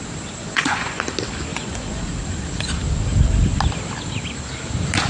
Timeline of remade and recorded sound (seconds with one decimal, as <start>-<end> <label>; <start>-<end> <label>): 0.0-0.4 recorded; 0.4-1.0 remade; 1.0-1.5 recorded; 1.5-2.1 remade; 2.1-5.1 recorded